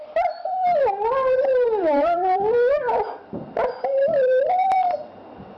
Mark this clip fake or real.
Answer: fake